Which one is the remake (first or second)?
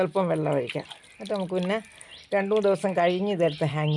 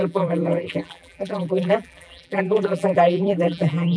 second